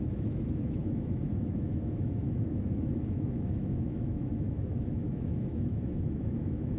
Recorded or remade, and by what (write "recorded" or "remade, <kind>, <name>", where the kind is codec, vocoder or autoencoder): remade, autoencoder, DAC-VAE